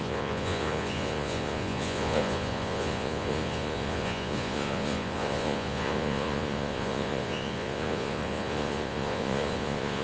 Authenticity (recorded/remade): remade